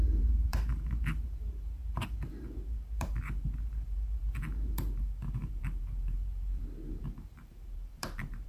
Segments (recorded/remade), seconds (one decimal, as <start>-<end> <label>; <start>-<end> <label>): 0.0-8.5 remade